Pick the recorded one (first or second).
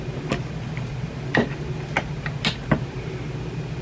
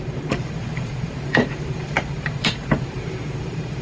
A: first